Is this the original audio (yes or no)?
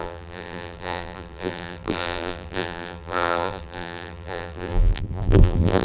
no